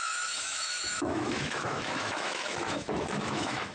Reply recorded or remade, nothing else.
remade